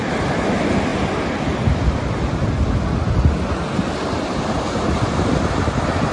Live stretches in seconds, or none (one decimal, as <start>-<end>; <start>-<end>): 0.0-6.1